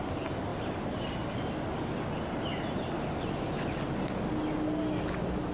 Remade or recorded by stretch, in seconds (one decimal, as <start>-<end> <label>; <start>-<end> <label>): 0.0-5.5 recorded